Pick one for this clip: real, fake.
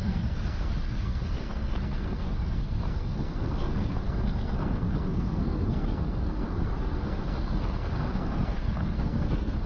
fake